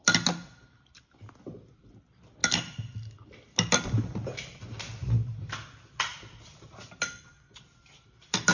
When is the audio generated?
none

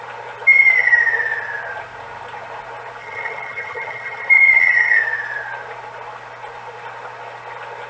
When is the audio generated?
3.0-5.0 (vocoder, HiFi-GAN)